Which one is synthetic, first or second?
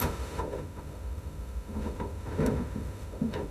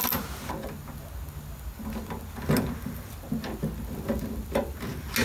first